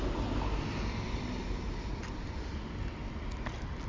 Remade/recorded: recorded